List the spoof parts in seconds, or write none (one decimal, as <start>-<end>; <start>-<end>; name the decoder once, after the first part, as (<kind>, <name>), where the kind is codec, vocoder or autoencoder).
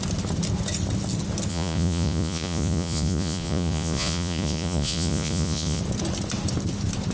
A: 1.5-5.8 (vocoder, Vocos)